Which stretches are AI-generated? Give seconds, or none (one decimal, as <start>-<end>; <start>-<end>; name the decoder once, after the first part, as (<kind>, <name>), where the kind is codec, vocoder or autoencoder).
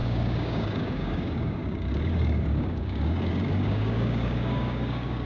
0.0-5.3 (codec, DAC)